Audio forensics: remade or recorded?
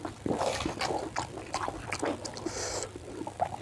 recorded